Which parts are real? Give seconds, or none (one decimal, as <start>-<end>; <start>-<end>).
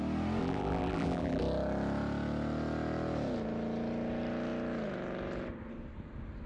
0.0-0.4; 1.4-6.5